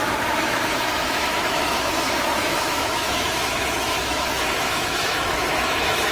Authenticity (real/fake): fake